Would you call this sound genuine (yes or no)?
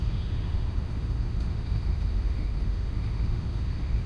no